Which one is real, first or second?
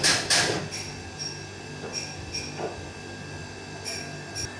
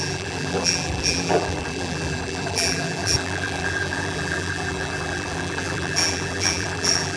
first